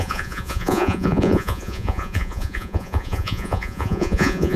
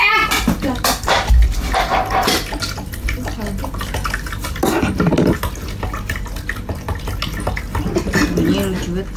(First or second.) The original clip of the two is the second